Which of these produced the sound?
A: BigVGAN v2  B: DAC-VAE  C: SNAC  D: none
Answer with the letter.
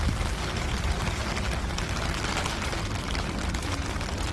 D